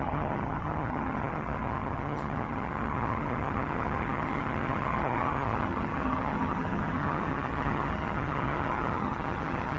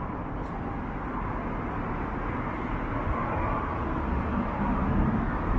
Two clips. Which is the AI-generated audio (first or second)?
first